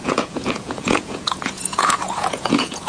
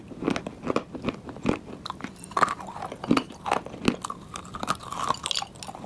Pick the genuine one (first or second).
second